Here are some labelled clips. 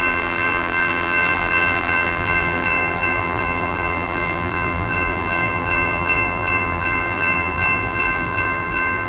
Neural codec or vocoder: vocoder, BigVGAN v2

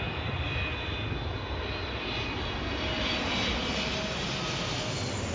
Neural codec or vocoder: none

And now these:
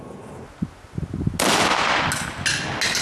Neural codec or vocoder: none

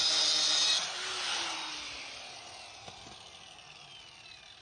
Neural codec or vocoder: none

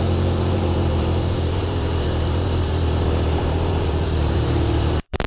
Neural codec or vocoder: vocoder, BigVGAN v2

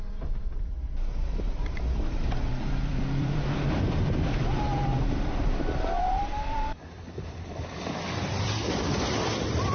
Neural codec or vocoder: vocoder, BigVGAN v2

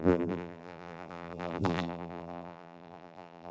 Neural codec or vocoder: vocoder, BigVGAN v2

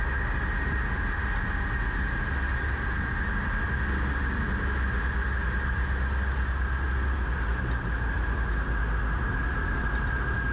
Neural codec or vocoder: none